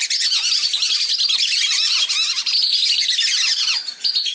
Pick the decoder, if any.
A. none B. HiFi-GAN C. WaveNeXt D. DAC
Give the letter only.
A